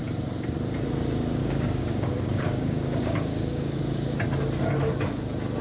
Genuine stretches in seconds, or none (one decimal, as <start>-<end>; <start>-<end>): 0.0-1.4; 3.8-5.6